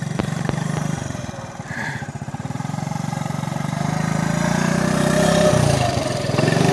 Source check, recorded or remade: remade